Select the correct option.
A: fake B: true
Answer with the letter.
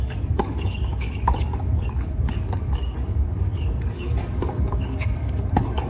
A